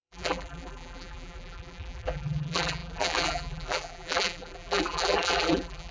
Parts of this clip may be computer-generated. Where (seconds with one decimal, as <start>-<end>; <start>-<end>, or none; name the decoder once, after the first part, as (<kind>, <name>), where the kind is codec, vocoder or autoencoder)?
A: 0.0-5.9 (vocoder, BigVGAN v2)